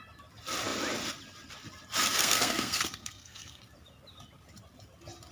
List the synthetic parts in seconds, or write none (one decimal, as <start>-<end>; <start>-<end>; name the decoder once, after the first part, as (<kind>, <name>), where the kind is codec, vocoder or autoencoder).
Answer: 2.2-3.6 (codec, SNAC)